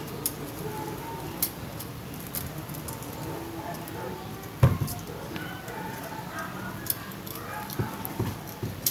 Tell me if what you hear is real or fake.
real